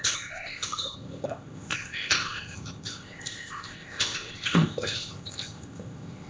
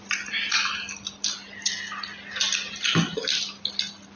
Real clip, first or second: second